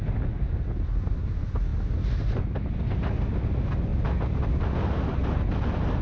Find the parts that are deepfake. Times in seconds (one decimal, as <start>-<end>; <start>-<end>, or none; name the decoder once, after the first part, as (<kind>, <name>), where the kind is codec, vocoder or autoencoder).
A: 3.9-4.4 (vocoder, BigVGAN v2)